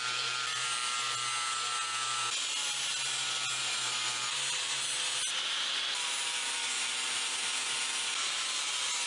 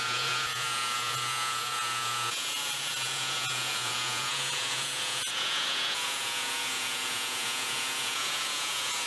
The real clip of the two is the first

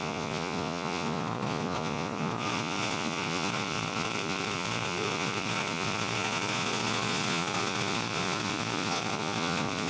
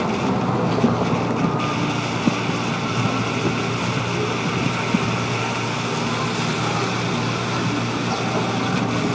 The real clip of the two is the second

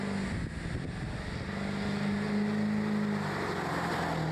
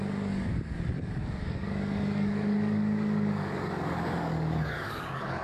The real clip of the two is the first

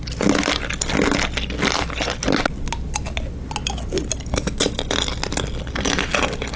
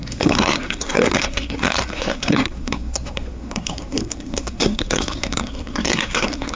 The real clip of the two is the first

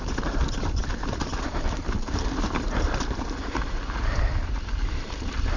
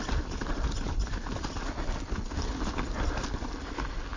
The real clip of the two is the second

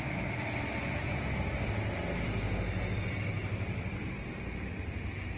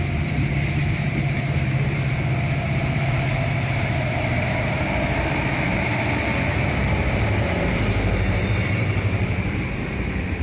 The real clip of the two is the first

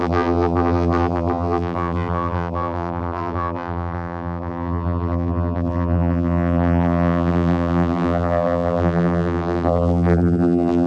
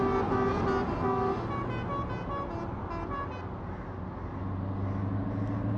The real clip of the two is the second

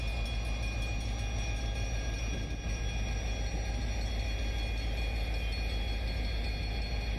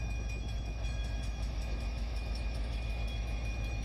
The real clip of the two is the first